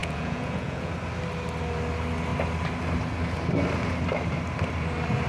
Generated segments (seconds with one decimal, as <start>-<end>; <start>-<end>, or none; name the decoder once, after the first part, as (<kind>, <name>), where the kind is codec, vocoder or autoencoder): 0.0-0.9 (vocoder, Vocos)